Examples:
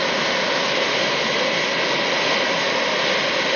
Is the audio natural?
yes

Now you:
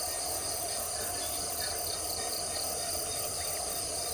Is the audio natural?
no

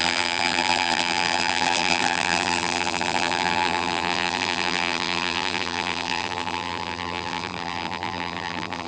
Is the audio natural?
no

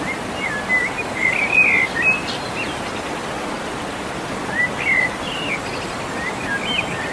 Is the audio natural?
yes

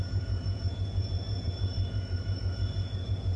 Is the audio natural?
no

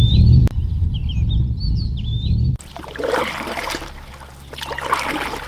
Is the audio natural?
yes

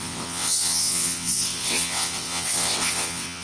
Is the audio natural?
no